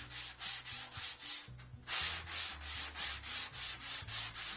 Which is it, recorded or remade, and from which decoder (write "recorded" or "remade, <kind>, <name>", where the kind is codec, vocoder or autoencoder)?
recorded